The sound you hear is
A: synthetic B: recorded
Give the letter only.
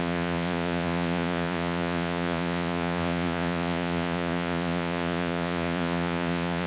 A